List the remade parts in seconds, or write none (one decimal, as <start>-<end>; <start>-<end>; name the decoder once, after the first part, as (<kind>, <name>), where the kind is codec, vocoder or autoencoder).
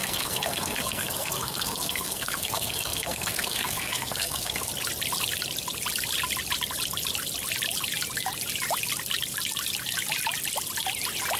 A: 0.0-4.7 (codec, SNAC)